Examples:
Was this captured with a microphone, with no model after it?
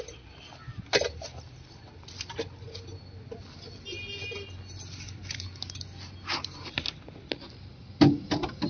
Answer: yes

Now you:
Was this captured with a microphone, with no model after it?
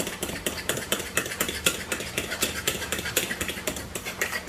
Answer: no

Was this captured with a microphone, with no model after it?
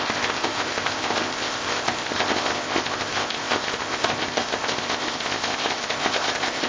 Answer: no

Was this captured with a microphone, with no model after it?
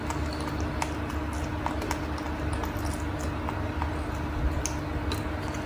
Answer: yes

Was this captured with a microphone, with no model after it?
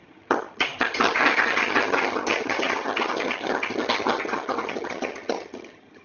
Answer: no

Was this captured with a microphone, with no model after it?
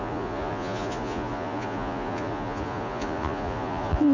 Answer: no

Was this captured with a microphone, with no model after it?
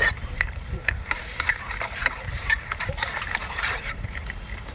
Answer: no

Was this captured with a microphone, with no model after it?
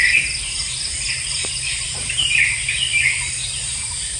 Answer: no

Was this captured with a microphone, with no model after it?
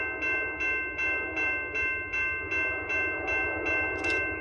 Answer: yes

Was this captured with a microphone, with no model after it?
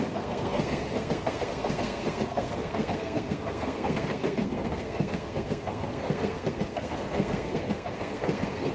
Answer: no